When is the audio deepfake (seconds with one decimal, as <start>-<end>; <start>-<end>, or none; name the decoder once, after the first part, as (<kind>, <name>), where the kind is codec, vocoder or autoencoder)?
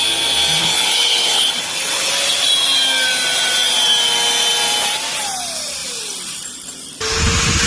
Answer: 0.6-2.1 (codec, HILCodec)